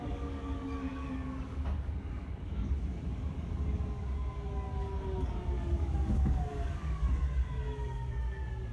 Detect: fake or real fake